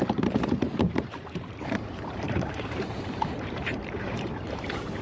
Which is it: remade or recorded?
remade